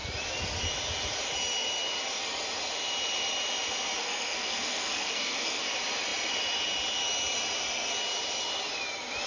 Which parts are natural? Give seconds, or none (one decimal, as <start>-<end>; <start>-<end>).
0.0-4.0; 5.6-9.3